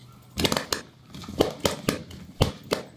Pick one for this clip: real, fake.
real